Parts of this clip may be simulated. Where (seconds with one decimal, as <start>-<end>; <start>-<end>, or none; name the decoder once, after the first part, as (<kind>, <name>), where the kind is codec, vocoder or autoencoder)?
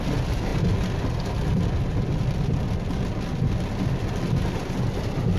none